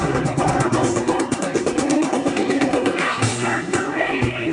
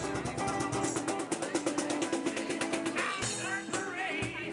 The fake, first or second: first